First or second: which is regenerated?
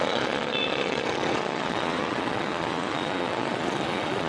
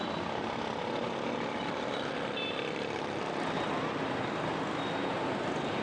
first